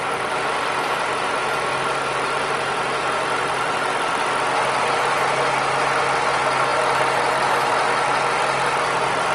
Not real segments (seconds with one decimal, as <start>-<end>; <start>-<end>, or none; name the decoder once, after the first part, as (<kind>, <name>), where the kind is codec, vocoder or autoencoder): none